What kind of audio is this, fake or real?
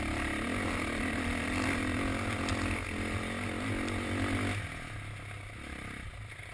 real